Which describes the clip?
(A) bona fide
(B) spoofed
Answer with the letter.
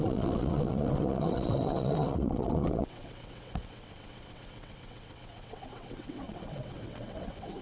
B